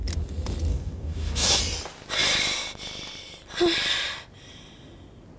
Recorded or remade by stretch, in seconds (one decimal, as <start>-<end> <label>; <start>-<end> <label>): 0.0-0.7 recorded; 0.7-1.6 remade; 1.6-5.4 recorded